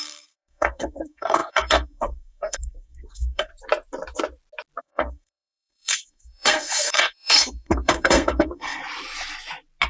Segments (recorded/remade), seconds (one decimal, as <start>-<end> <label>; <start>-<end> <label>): 0.0-3.5 remade; 3.5-4.8 recorded; 4.8-8.8 remade; 8.8-9.9 recorded